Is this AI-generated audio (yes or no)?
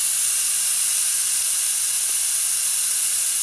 no